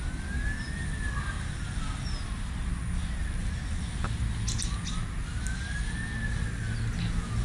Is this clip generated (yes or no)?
no